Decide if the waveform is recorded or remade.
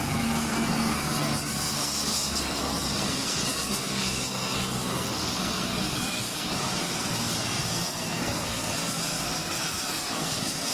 remade